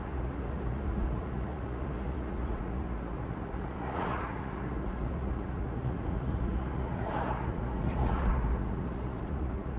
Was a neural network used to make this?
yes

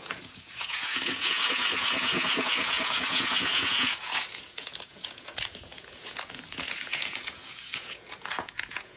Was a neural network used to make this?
yes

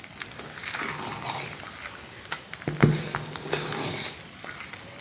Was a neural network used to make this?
no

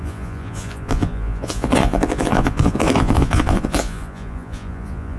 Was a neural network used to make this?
yes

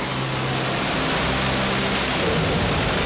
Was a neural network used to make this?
no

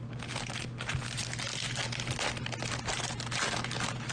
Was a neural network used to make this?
no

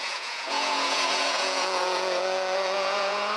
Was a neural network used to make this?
yes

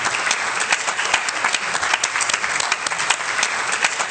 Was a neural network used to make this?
no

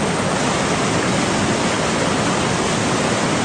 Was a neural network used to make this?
no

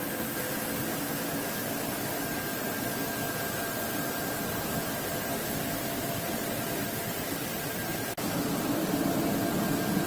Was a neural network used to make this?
no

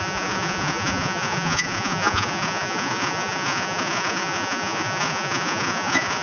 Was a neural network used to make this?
yes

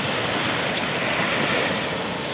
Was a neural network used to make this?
no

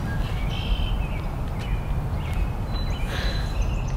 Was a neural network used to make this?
no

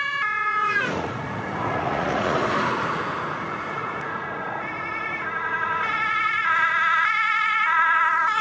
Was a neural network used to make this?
yes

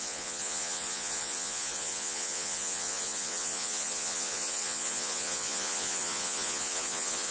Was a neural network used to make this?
yes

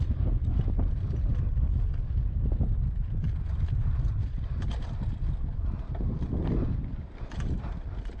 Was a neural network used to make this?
no